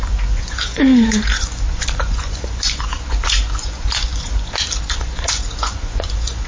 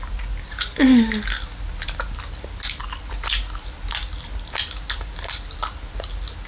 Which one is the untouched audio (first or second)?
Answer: second